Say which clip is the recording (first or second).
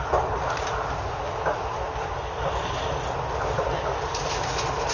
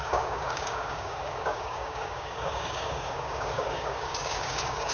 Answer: first